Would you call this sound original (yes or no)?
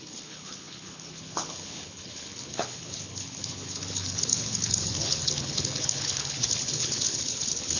no